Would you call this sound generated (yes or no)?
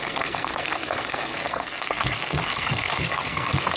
yes